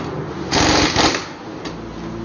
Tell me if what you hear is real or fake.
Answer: real